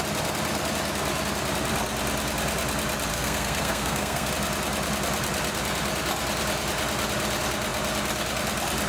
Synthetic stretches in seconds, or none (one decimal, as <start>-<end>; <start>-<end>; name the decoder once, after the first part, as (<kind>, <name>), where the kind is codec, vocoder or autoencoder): 3.1-4.3 (codec, SNAC)